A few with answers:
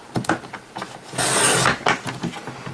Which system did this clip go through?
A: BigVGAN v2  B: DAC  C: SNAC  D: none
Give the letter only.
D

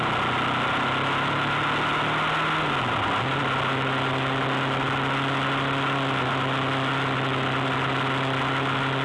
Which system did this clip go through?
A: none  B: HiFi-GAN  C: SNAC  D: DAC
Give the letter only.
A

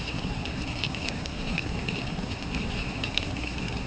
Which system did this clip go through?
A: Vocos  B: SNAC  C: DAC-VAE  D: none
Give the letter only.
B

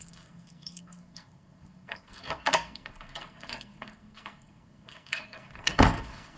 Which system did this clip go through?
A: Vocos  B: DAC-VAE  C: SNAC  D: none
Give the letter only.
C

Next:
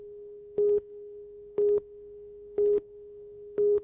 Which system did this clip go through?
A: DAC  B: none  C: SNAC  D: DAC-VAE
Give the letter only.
C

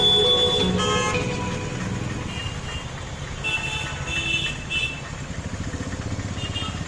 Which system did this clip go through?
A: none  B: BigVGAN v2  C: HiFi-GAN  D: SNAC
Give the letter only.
A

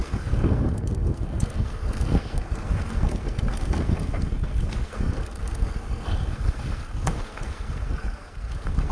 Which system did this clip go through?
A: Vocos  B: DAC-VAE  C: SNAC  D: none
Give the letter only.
C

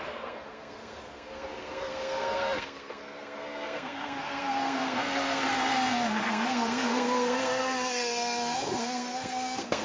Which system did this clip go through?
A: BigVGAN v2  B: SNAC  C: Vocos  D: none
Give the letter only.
B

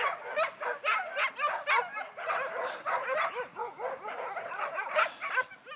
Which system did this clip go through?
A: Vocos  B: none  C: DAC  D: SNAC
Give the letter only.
B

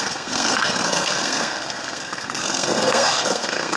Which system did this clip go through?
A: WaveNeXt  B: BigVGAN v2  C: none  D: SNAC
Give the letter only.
D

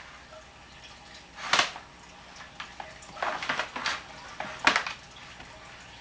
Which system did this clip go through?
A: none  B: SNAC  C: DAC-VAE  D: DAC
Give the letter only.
A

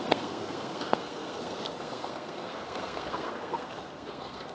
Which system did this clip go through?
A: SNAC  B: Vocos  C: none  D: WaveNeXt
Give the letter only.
A